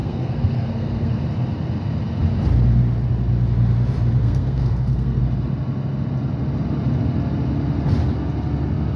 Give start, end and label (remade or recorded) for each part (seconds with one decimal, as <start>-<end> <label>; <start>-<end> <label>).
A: 0.0-1.2 remade; 1.2-4.2 recorded; 4.2-5.2 remade; 5.2-9.0 recorded